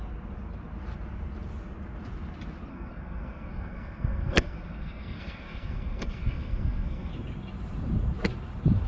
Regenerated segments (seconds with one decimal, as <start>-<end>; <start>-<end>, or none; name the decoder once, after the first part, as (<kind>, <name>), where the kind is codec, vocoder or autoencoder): 2.7-7.1 (codec, SNAC)